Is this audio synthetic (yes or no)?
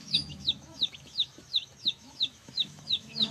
yes